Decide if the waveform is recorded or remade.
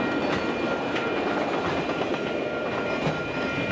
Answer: recorded